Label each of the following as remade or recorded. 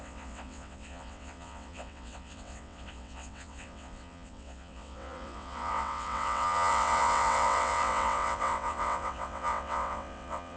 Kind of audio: remade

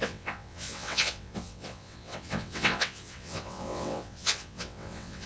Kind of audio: remade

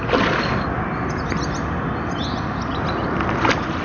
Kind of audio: recorded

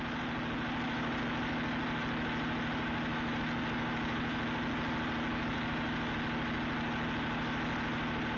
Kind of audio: recorded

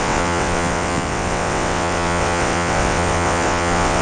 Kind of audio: remade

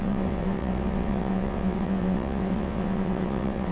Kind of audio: remade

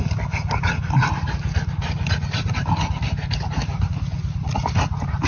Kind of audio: recorded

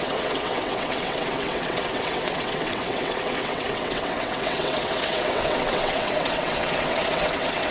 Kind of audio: remade